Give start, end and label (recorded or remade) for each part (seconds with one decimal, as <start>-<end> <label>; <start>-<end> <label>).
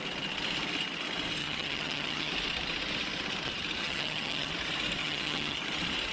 0.0-1.4 recorded; 1.4-2.3 remade; 2.3-3.8 recorded; 3.8-4.5 remade; 4.5-5.0 recorded; 5.0-5.6 remade; 5.6-6.1 recorded